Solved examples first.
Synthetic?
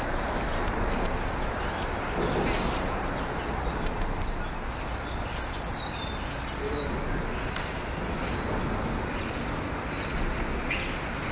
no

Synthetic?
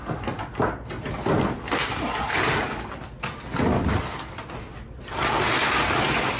no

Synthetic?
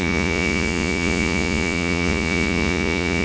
yes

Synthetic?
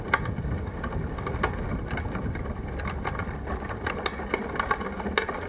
no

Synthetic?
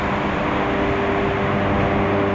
no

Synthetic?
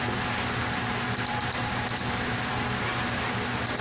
no